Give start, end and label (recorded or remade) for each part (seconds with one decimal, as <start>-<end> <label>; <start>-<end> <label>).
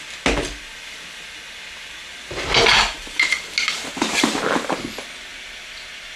0.0-5.3 recorded; 5.3-6.2 remade